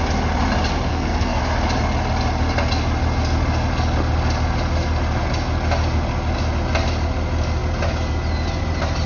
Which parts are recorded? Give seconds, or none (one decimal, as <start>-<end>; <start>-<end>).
0.0-0.9; 1.4-9.1